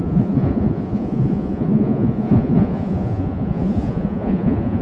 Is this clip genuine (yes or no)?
no